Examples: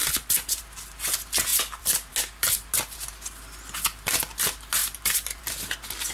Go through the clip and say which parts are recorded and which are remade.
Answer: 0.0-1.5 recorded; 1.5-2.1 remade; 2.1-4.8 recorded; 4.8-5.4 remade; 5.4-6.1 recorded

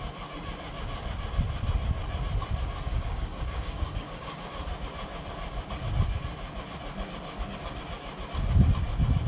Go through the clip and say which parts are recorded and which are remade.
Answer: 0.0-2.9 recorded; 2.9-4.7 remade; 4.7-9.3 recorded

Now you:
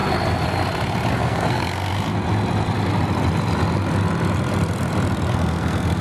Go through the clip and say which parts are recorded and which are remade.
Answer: 0.0-1.1 recorded; 1.1-1.9 remade; 1.9-5.3 recorded; 5.3-6.0 remade